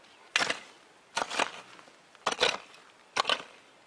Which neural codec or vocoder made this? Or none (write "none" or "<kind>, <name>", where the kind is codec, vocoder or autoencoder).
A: none